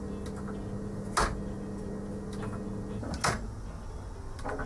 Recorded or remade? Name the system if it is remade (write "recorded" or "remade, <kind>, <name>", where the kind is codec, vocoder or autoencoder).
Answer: recorded